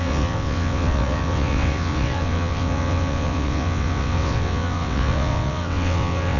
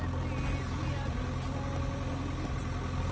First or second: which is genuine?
second